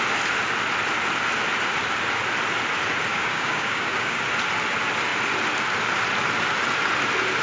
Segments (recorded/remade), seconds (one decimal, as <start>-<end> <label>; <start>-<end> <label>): 0.0-3.1 recorded; 3.1-4.2 remade; 4.2-7.4 recorded